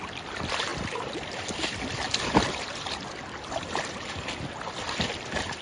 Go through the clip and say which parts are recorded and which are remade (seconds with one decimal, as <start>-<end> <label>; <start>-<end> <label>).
0.0-5.6 recorded